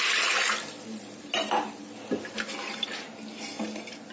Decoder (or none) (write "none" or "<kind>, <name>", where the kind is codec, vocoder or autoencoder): none